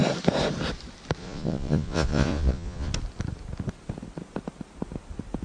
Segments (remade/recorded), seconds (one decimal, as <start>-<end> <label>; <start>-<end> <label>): 0.0-1.2 recorded; 1.2-2.9 remade; 2.9-5.4 recorded